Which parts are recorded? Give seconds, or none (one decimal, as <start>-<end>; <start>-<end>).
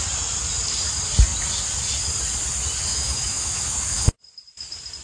0.0-2.9; 4.1-5.0